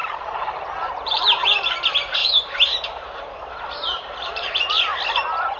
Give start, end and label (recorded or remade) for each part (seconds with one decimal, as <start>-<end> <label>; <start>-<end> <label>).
0.0-0.9 recorded; 0.9-4.9 remade; 4.9-5.6 recorded